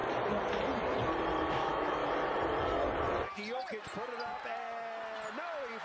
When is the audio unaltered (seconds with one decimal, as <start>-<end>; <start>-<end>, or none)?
0.0-1.5; 2.0-5.8